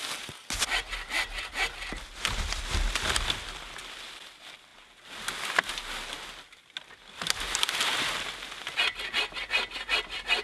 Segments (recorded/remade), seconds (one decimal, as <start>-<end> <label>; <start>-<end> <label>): 0.0-10.4 recorded